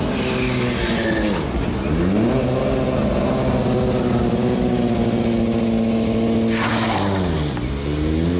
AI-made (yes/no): no